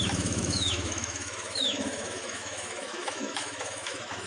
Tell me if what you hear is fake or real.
fake